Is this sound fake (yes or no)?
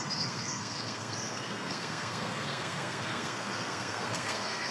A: yes